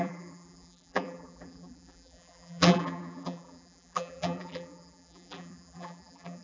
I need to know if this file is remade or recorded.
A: remade